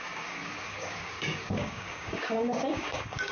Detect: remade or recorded remade